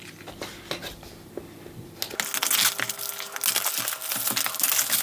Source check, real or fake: real